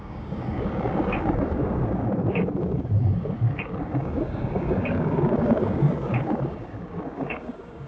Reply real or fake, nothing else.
fake